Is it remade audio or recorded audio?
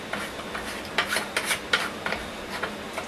recorded